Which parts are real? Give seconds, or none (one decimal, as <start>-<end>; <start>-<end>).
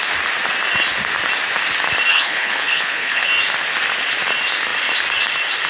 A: 0.0-2.1; 3.3-5.7